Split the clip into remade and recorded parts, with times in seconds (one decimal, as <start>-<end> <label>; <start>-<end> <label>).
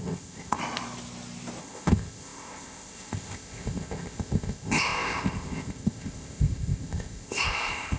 0.0-0.6 remade; 0.6-1.6 recorded; 1.6-8.0 remade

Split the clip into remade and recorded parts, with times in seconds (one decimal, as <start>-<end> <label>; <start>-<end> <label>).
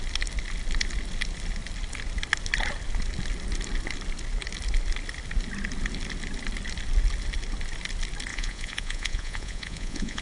0.0-8.3 recorded; 8.3-10.2 remade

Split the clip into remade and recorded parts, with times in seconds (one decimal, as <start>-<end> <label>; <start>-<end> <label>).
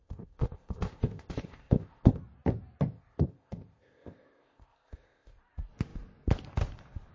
0.0-2.2 remade; 2.2-2.9 recorded; 2.9-5.4 remade; 5.4-7.1 recorded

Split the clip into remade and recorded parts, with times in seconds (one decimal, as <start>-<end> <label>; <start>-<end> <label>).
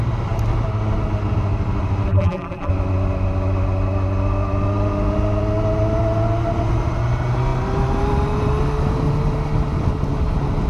0.0-2.1 recorded; 2.1-2.7 remade; 2.7-10.7 recorded